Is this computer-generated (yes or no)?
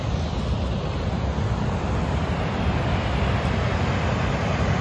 no